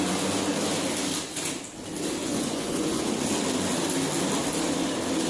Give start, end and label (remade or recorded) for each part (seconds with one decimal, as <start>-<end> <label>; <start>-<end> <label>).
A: 0.0-2.2 recorded; 2.2-3.1 remade; 3.1-5.3 recorded